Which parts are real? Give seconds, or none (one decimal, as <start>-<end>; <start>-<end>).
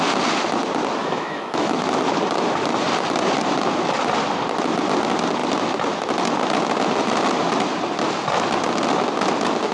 0.0-1.0; 1.9-9.7